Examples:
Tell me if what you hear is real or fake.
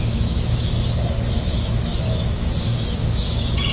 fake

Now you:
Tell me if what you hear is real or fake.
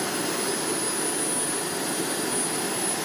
real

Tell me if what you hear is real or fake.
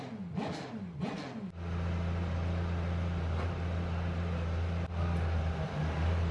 real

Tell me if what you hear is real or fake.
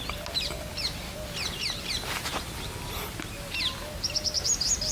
real